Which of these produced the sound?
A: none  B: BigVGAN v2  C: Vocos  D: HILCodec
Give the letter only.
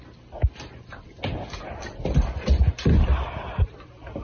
A